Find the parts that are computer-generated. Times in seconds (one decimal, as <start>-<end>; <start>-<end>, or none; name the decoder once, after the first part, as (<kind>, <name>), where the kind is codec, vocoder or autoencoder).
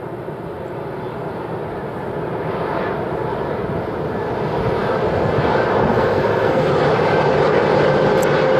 5.9-6.7 (codec, SNAC)